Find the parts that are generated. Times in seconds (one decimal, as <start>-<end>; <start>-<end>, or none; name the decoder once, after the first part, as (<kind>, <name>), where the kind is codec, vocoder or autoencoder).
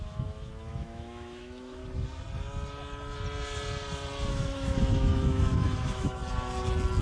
0.0-1.8 (autoencoder, DAC-VAE); 4.3-6.2